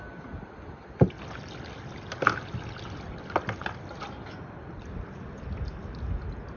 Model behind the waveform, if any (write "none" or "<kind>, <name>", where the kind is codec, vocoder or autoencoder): none